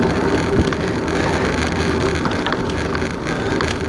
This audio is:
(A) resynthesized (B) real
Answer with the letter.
B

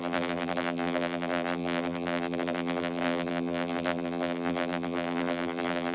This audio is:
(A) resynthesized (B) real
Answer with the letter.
A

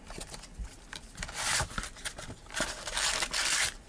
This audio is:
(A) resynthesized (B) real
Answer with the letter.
B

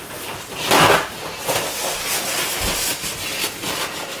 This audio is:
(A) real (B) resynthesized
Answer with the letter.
A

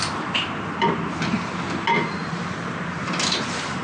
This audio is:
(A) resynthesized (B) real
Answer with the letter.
A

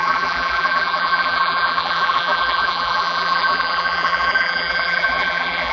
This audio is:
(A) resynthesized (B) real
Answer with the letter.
A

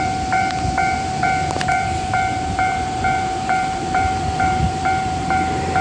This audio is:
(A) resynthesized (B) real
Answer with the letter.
A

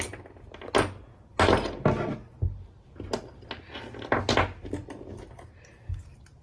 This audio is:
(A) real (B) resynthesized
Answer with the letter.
A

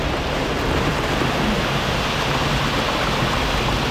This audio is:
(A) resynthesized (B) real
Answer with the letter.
B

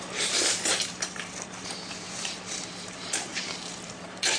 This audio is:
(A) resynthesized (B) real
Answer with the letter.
A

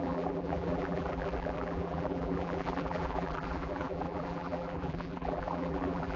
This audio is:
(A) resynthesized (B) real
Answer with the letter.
A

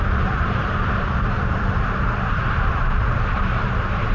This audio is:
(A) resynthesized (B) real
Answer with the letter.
A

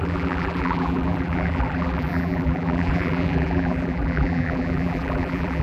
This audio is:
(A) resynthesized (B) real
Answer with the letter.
A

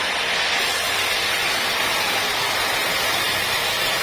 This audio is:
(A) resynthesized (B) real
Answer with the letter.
B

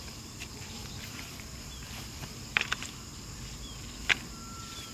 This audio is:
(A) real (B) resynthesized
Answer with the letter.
B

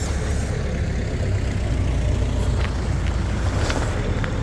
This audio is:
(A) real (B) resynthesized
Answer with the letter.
A